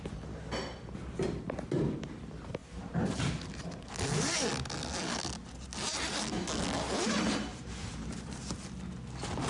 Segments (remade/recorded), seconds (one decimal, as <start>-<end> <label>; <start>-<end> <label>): 0.0-2.6 recorded; 2.6-3.2 remade; 3.2-7.5 recorded; 7.5-8.6 remade; 8.6-9.5 recorded